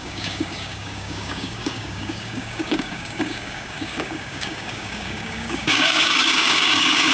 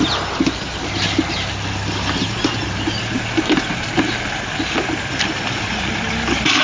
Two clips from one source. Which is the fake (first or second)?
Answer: first